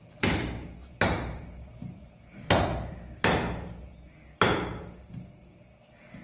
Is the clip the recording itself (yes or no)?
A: yes